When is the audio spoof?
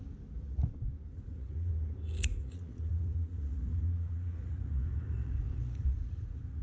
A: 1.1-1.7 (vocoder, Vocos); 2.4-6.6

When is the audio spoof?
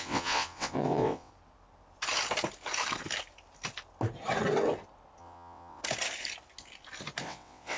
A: 0.0-1.3 (vocoder, WaveNeXt); 5.2-5.8; 7.2-7.8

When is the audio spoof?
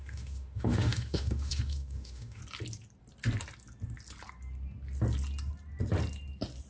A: 0.0-2.4 (autoencoder, DAC-VAE)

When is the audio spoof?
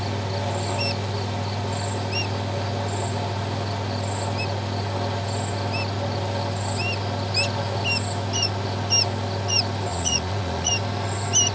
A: 9.9-10.7 (vocoder, Vocos)